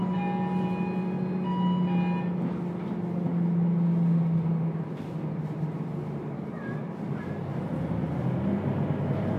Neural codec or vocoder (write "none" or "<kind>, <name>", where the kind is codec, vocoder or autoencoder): none